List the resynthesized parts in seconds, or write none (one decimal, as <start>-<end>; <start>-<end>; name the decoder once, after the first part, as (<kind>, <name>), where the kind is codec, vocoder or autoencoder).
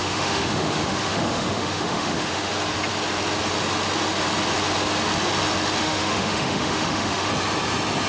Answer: 0.0-2.5 (autoencoder, DAC-VAE); 5.8-7.3